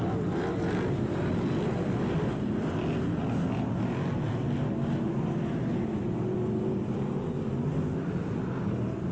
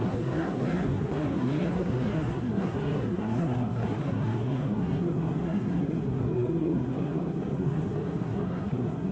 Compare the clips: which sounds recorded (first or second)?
first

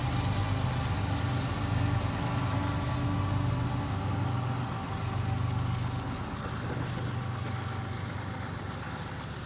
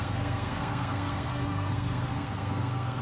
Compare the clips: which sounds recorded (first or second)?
first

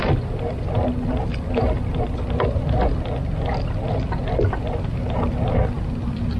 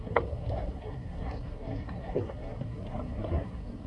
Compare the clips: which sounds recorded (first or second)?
first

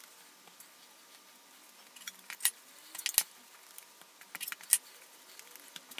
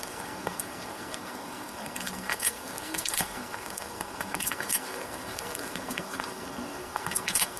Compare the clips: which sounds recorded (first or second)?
first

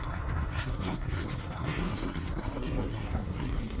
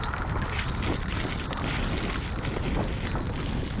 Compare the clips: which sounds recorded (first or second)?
second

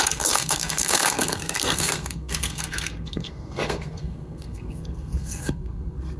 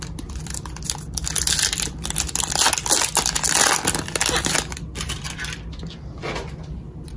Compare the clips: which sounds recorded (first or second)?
second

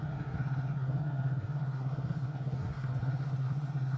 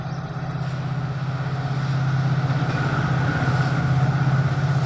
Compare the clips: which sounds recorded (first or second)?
second